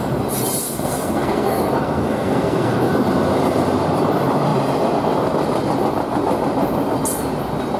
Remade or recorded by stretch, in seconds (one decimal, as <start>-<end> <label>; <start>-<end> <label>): 0.0-0.6 recorded; 0.6-2.9 remade; 2.9-7.8 recorded